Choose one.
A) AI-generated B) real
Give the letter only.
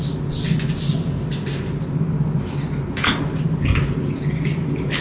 B